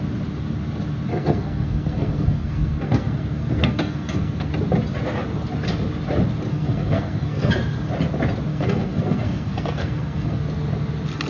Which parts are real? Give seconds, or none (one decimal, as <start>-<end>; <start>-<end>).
0.0-1.1; 4.5-6.5; 7.5-8.5; 10.4-11.3